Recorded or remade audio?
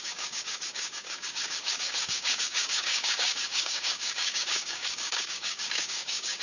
remade